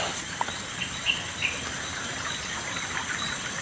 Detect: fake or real real